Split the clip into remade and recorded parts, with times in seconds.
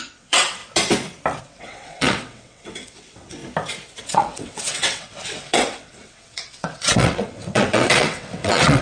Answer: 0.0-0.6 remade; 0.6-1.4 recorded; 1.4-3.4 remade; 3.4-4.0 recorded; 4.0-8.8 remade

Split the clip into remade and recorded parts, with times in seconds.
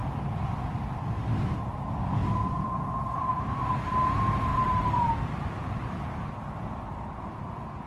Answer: 0.0-4.5 recorded; 4.5-5.1 remade; 5.1-7.9 recorded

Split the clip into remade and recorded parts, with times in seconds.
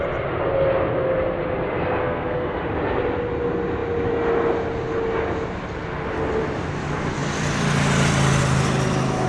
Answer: 0.0-2.0 recorded; 2.0-2.6 remade; 2.6-9.3 recorded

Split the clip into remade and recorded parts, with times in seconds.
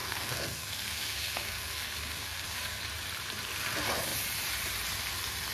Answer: 0.0-2.8 remade; 2.8-5.5 recorded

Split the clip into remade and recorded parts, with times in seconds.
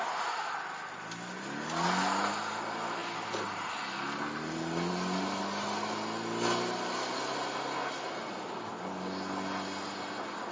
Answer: 0.0-10.5 recorded